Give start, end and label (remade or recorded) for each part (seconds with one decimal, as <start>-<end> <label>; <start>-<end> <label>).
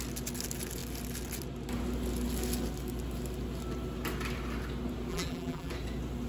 0.0-5.1 recorded; 5.1-5.7 remade; 5.7-6.3 recorded